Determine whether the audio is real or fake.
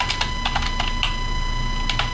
real